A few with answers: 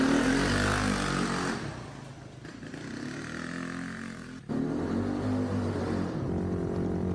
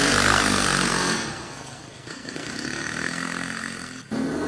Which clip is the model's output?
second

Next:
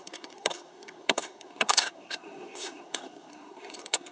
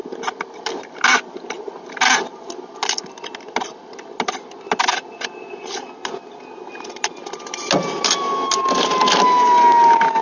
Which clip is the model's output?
first